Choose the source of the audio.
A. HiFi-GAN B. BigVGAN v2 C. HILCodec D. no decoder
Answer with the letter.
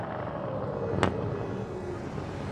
D